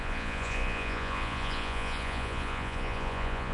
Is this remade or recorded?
remade